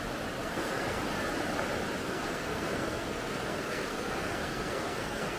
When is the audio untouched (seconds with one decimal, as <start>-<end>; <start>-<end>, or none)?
0.0-0.4; 1.0-2.0

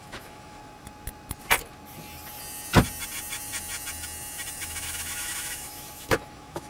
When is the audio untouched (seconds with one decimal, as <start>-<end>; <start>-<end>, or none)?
0.6-4.6

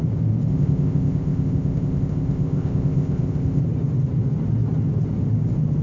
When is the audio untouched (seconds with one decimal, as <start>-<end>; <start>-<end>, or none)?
0.0-0.5; 3.6-5.8

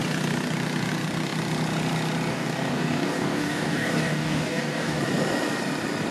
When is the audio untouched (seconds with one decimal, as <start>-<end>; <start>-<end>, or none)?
0.0-2.3; 5.0-6.1

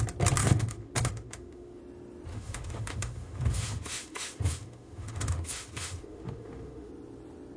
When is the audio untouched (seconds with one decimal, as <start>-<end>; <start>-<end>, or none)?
0.0-0.4; 1.8-2.3; 6.9-7.6

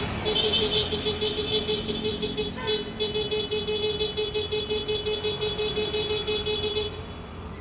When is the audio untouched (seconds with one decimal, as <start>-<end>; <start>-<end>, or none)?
0.0-7.6

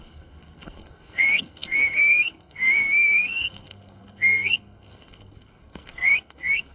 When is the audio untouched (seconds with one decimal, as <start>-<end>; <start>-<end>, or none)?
none